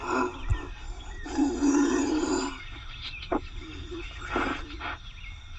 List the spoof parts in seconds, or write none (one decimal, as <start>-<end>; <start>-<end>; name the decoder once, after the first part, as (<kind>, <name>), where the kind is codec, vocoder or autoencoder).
0.5-2.2 (vocoder, BigVGAN v2)